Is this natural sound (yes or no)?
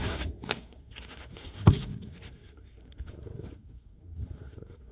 no